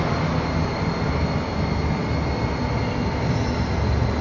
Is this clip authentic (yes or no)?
yes